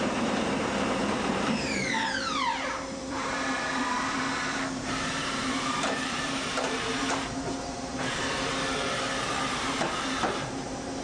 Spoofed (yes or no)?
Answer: yes